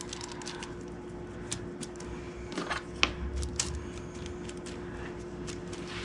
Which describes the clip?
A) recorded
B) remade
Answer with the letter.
A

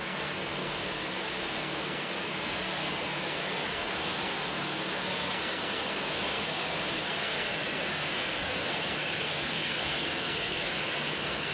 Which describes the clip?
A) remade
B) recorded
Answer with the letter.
A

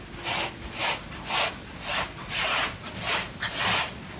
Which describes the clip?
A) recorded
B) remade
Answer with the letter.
A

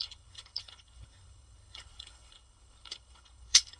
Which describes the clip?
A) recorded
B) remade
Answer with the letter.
B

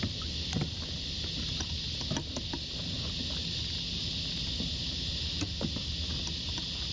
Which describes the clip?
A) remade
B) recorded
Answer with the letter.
B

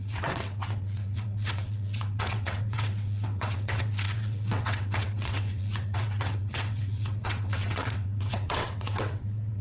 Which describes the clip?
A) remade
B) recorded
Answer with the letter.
A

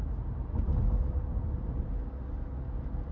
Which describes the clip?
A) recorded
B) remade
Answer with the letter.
A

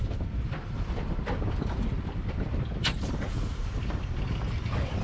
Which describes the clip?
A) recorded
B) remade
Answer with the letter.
B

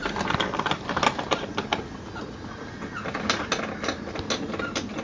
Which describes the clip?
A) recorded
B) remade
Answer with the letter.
A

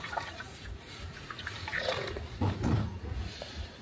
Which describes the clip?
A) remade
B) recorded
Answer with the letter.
A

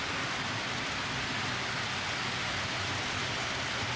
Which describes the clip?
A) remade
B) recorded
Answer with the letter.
B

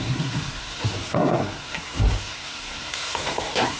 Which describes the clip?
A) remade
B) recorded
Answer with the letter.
A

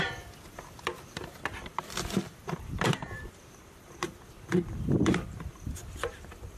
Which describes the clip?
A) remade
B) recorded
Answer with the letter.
A